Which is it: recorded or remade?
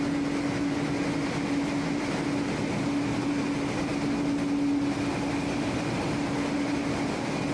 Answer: recorded